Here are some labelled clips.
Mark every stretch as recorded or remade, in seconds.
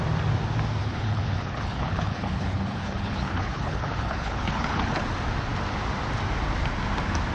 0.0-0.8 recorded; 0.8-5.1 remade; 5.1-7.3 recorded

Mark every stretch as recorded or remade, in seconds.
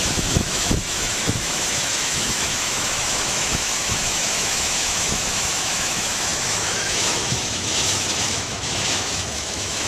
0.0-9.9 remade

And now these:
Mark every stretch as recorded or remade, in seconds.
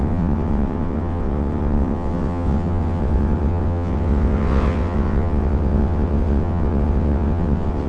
0.0-7.9 remade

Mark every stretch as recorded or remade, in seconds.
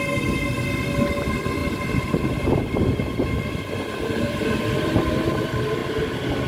0.0-1.6 recorded; 1.6-4.3 remade; 4.3-6.5 recorded